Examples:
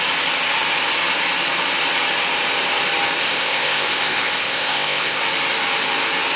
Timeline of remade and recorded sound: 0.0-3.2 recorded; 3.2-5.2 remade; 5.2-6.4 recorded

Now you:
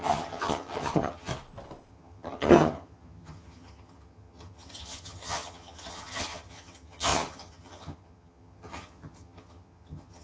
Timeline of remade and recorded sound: 0.0-1.3 remade; 1.3-1.9 recorded; 1.9-10.2 remade

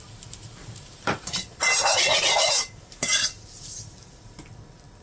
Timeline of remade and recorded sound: 0.0-0.4 recorded; 0.4-3.1 remade; 3.1-5.0 recorded

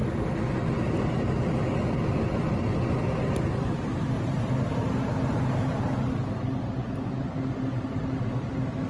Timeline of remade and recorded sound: 0.0-8.9 recorded

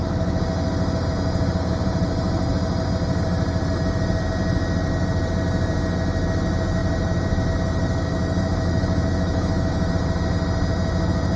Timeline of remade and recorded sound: 0.0-8.1 recorded; 8.1-9.9 remade; 9.9-11.4 recorded

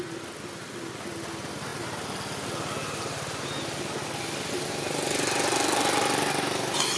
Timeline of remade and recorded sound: 0.0-7.0 recorded

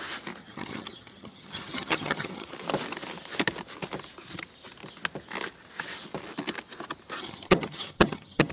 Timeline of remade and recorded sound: 0.0-0.4 recorded; 0.4-2.5 remade; 2.5-7.2 recorded; 7.2-8.5 remade

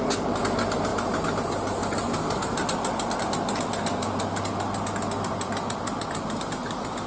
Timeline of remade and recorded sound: 0.0-7.1 recorded